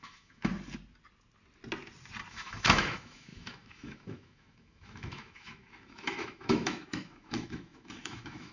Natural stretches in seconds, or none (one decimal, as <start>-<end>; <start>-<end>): 0.5-2.3